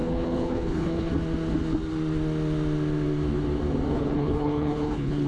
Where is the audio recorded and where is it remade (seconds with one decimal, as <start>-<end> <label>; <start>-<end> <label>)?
0.0-1.1 remade; 1.1-3.9 recorded; 3.9-5.3 remade